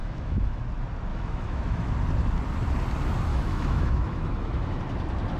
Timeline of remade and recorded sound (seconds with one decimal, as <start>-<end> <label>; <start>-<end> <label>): 0.0-0.6 remade; 0.6-1.1 recorded; 1.1-1.9 remade; 1.9-3.3 recorded; 3.3-4.8 remade; 4.8-5.4 recorded